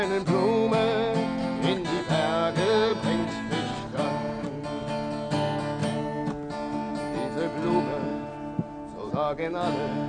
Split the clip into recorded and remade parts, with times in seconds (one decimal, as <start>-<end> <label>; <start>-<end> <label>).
0.0-2.9 recorded; 2.9-4.6 remade; 4.6-5.8 recorded; 5.8-6.9 remade; 6.9-8.1 recorded; 8.1-9.1 remade; 9.1-10.1 recorded